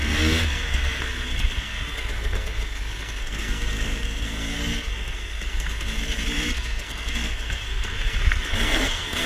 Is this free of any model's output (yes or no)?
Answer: no